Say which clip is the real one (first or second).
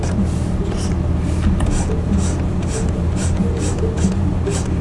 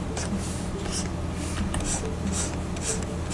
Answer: second